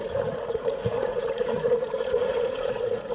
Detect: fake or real fake